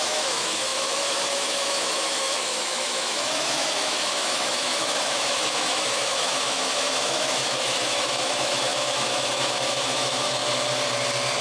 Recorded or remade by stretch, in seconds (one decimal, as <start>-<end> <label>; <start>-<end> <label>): 0.0-10.4 remade; 10.4-11.4 recorded